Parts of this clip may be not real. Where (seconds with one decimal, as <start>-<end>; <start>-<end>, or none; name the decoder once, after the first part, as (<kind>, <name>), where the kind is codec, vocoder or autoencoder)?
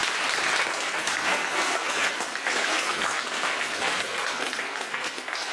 0.6-5.5 (codec, SNAC)